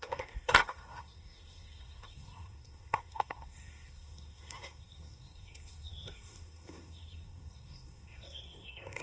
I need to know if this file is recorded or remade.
remade